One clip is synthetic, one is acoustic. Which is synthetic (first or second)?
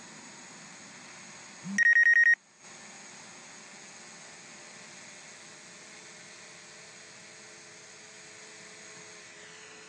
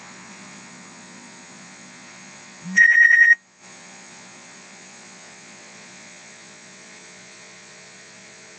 second